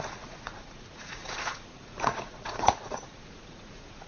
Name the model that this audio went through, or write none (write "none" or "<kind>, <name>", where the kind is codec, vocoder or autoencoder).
vocoder, Vocos